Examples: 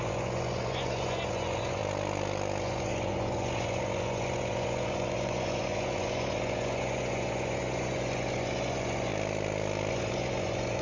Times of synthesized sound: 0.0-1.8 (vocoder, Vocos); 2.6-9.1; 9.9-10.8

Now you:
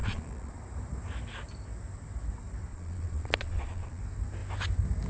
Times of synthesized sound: 0.0-0.6 (vocoder, Vocos); 2.7-4.0